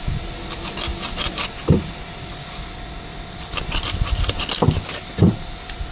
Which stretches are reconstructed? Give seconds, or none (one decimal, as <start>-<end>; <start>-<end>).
none